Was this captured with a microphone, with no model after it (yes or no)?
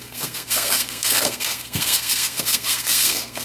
no